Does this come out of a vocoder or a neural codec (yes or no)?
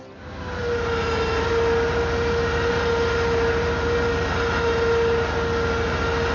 no